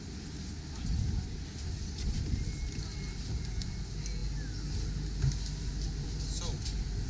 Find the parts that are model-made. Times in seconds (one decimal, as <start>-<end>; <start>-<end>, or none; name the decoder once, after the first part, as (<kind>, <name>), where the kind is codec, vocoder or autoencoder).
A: none